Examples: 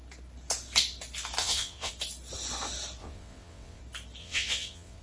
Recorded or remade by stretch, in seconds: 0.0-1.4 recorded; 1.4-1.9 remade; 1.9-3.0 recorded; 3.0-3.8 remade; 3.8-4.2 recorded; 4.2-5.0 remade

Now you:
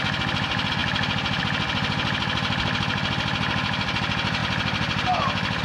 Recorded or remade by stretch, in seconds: 0.0-4.4 recorded; 4.4-5.6 remade

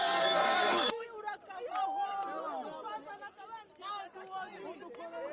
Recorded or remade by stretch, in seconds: 0.0-0.4 recorded; 0.4-1.0 remade; 1.0-5.3 recorded

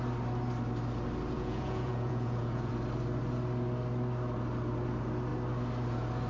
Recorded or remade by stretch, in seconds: 0.0-1.3 recorded; 1.3-2.7 remade; 2.7-6.3 recorded

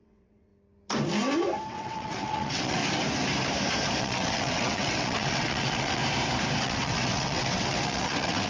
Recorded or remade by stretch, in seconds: 0.0-0.5 remade; 0.5-1.7 recorded; 1.7-2.8 remade; 2.8-4.0 recorded; 4.0-6.0 remade; 6.0-6.6 recorded; 6.6-8.5 remade